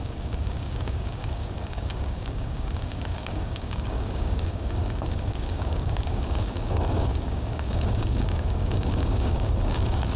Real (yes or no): no